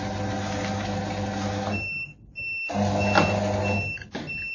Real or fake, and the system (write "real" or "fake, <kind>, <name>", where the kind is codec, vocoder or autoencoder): real